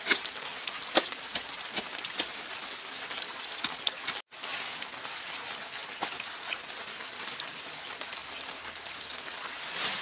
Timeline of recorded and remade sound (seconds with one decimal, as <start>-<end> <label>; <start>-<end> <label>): 0.0-10.0 recorded